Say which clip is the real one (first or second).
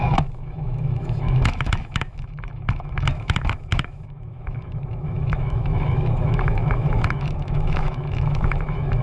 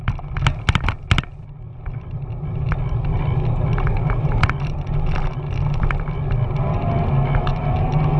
second